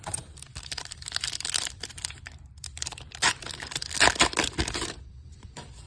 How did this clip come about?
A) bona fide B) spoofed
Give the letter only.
B